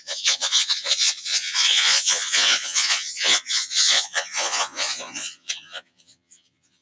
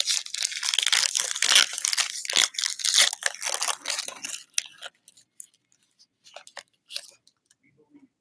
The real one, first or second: second